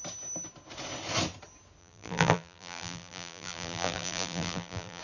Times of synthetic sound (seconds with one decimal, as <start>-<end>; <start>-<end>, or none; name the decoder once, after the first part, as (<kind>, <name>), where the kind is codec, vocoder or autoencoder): 1.8-5.0 (vocoder, BigVGAN v2)